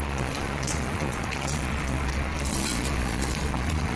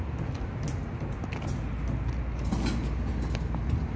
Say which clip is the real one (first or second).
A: second